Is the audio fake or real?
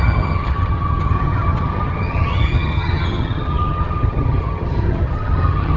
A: fake